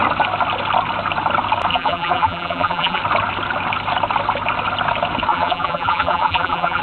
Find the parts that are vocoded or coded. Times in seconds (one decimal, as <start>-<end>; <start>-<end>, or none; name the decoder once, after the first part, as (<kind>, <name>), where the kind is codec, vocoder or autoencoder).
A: 1.7-3.0 (vocoder, BigVGAN v2); 5.3-6.8